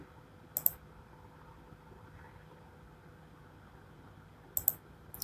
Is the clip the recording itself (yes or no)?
yes